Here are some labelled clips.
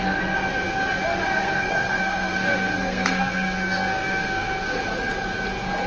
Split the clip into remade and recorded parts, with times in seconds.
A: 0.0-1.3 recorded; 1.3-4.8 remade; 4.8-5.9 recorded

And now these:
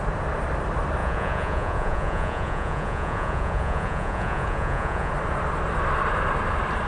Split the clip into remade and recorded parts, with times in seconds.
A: 0.0-1.0 recorded; 1.0-5.1 remade; 5.1-6.9 recorded

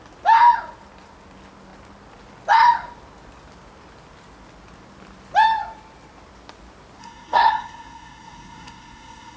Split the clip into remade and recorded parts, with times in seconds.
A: 0.0-7.0 recorded; 7.0-9.4 remade

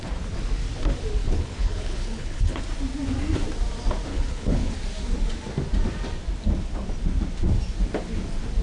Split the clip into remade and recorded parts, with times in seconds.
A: 0.0-1.2 recorded; 1.2-2.6 remade; 2.6-4.1 recorded; 4.1-4.7 remade; 4.7-8.6 recorded

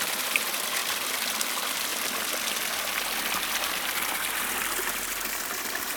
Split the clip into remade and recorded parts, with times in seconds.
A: 0.0-0.8 remade; 0.8-1.4 recorded; 1.4-1.9 remade; 1.9-3.4 recorded; 3.4-6.0 remade

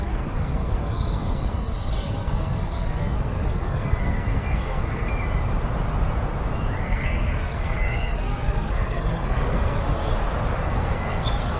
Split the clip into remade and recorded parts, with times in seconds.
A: 0.0-5.1 remade; 5.1-6.8 recorded; 6.8-10.1 remade; 10.1-10.6 recorded; 10.6-11.6 remade

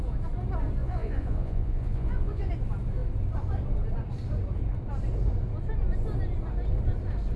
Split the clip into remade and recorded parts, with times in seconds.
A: 0.0-0.8 recorded; 0.8-2.5 remade; 2.5-7.4 recorded

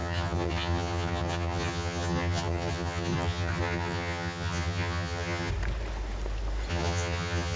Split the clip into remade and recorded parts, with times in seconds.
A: 0.0-5.5 remade; 5.5-6.7 recorded; 6.7-7.6 remade